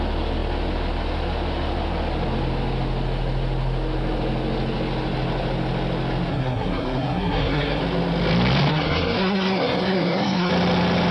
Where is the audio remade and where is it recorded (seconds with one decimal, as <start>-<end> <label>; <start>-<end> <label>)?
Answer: 0.0-6.3 recorded; 6.3-7.8 remade; 7.8-8.7 recorded; 8.7-10.5 remade; 10.5-11.1 recorded